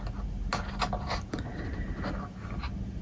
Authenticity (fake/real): real